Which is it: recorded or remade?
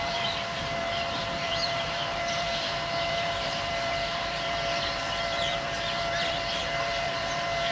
remade